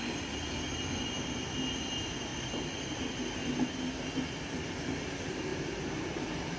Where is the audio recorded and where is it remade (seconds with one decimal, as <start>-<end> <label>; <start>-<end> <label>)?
0.0-6.6 recorded